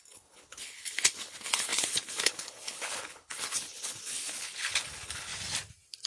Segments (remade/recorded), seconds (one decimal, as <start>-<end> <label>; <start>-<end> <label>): 0.0-5.3 remade; 5.3-6.1 recorded